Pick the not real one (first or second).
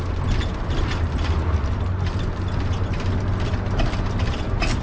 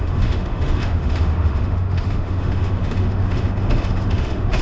second